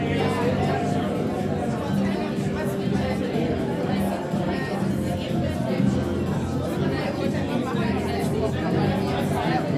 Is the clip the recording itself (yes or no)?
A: yes